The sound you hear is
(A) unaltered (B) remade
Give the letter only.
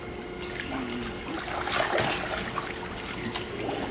A